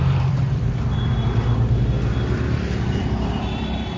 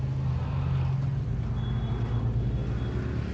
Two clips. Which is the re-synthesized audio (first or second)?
first